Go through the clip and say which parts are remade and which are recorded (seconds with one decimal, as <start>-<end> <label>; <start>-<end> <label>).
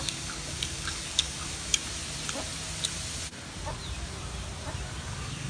0.0-1.8 remade; 1.8-5.1 recorded; 5.1-5.5 remade